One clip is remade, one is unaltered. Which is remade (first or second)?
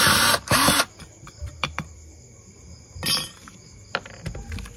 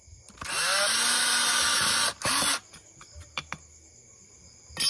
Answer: first